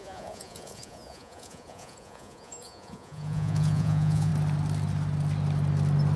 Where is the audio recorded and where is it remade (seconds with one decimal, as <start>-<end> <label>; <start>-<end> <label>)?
0.0-4.3 remade; 4.3-6.2 recorded